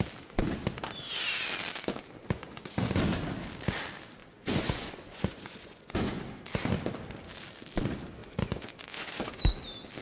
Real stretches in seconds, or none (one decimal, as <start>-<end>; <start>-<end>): 0.0-2.2; 2.9-4.2; 6.2-8.2; 9.5-10.0